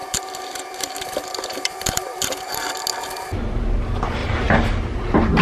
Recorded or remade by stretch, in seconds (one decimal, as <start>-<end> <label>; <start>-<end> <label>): 0.0-2.7 remade; 2.7-4.2 recorded; 4.2-5.0 remade; 5.0-5.4 recorded